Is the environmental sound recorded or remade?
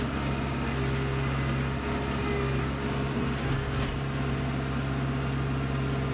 recorded